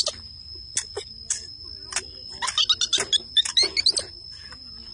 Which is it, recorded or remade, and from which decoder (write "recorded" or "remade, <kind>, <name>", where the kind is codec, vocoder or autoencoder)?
recorded